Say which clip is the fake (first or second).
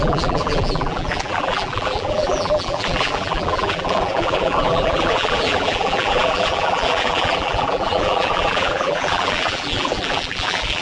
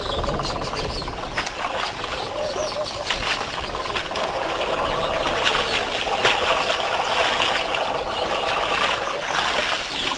first